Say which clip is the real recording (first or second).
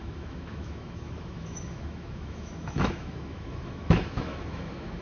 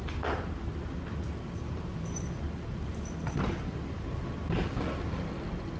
second